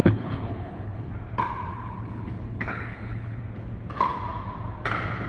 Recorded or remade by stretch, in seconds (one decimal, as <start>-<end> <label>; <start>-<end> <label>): 0.0-1.1 remade; 1.1-1.7 recorded; 1.7-3.4 remade; 3.4-5.3 recorded